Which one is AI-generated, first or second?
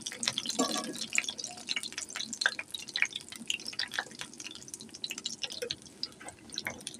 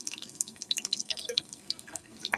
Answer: second